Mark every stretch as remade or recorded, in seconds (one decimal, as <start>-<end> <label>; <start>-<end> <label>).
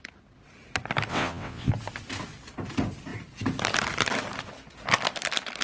0.0-1.1 recorded; 1.1-1.7 remade; 1.7-5.6 recorded